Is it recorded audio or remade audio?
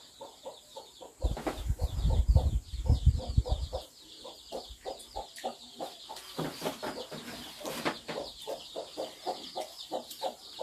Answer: remade